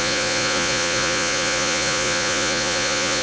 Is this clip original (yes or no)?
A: no